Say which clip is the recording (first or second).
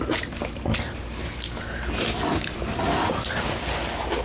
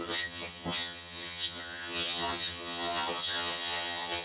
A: first